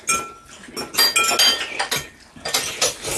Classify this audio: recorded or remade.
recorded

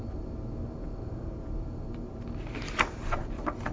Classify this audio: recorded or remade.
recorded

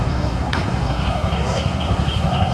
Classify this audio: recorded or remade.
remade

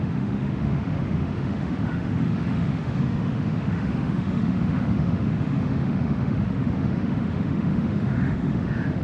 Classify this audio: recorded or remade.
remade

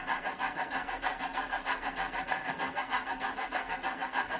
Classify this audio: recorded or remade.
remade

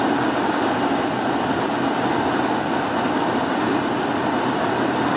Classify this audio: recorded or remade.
recorded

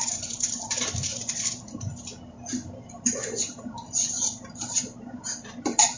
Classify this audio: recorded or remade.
remade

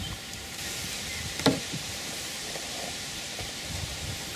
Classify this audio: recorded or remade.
remade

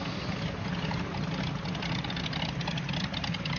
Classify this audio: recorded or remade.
recorded